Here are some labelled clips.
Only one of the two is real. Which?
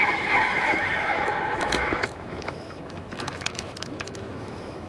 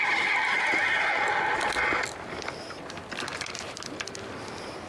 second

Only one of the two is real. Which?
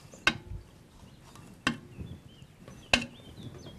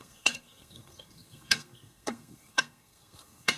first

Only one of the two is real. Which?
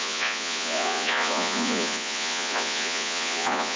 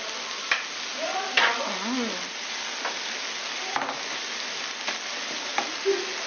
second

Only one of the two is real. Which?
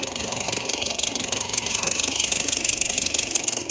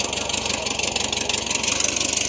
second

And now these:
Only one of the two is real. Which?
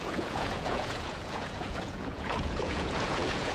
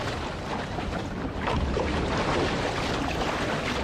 second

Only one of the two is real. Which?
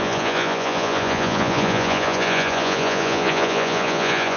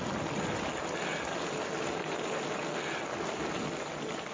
second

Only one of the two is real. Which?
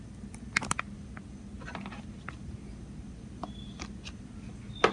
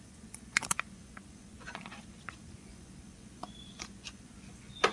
first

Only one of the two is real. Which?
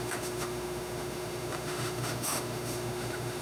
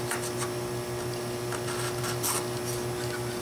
second